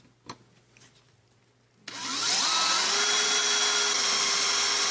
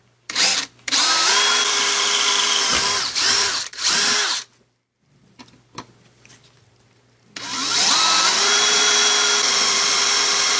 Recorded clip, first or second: first